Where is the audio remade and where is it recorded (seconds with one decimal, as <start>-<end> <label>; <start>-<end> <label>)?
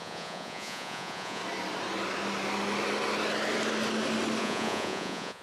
0.0-1.4 remade; 1.4-4.4 recorded; 4.4-5.4 remade